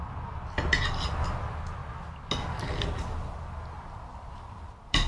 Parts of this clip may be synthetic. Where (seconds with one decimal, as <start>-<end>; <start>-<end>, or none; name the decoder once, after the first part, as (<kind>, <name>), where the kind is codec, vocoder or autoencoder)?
none